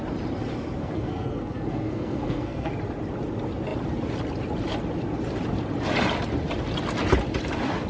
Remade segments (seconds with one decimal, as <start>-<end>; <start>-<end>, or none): 0.8-2.7